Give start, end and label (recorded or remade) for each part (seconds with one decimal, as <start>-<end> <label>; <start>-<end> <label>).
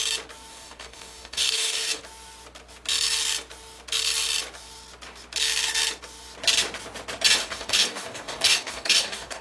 0.0-0.5 recorded; 0.5-2.0 remade; 2.0-7.4 recorded; 7.4-9.4 remade